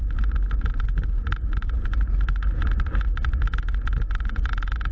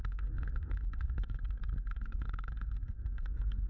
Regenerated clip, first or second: second